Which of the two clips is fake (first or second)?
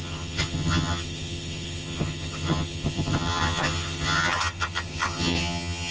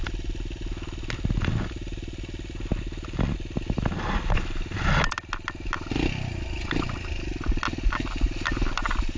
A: first